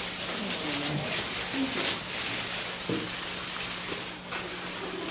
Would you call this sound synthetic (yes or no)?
no